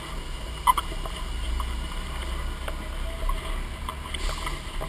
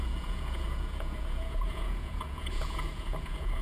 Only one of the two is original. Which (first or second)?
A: first